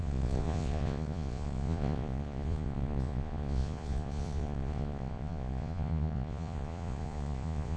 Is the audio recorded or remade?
remade